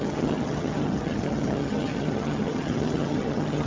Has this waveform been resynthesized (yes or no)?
yes